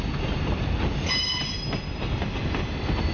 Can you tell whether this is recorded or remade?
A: recorded